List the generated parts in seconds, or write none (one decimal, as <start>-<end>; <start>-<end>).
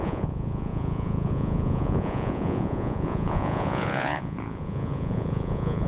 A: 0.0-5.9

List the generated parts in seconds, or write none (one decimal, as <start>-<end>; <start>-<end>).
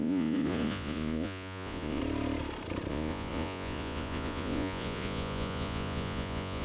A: 0.0-2.0; 2.9-6.6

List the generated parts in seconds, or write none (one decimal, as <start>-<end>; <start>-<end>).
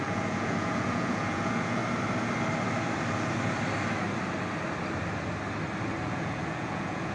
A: 0.0-1.8; 6.1-7.1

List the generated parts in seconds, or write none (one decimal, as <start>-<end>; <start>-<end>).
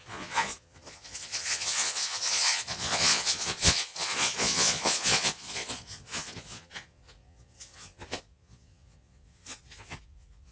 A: 0.0-10.5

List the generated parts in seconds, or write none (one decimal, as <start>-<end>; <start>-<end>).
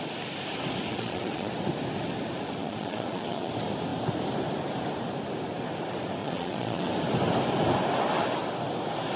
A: 0.9-1.5; 2.6-3.5; 6.2-6.9